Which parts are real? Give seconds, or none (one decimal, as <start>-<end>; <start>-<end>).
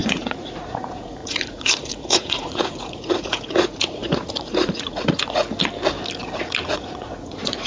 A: 5.4-6.2